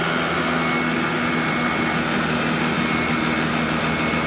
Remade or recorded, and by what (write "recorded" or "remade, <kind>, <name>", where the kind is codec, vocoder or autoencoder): recorded